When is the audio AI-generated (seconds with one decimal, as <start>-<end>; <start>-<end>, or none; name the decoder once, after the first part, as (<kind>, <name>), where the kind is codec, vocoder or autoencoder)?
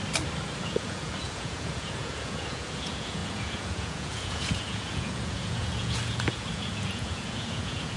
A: 0.6-8.0 (vocoder, Vocos)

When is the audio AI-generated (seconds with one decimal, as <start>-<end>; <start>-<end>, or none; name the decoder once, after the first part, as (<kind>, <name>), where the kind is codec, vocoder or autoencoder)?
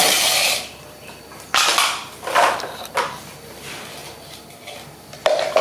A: none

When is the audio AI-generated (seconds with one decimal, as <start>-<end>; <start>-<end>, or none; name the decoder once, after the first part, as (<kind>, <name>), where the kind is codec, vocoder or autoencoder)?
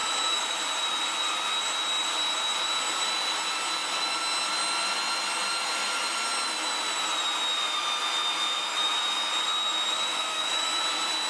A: 0.0-0.6 (autoencoder, DAC-VAE); 10.1-10.8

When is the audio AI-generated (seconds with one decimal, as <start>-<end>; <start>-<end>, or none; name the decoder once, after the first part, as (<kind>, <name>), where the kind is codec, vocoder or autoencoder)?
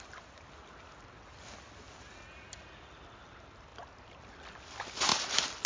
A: none